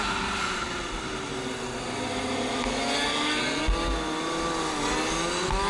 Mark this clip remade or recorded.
recorded